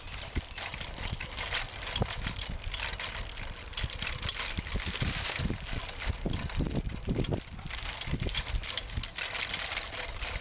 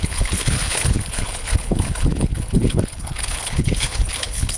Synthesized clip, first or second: second